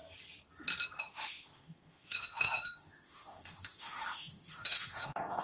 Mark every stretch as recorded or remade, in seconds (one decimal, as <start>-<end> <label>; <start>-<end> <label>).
0.0-1.0 recorded; 1.0-5.4 remade